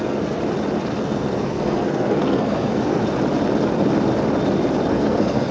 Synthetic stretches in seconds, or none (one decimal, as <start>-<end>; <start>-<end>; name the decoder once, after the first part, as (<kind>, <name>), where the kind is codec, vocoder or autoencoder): 0.0-0.4 (codec, SNAC); 1.0-3.0; 4.9-5.5